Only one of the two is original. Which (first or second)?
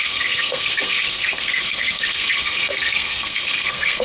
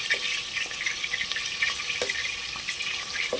second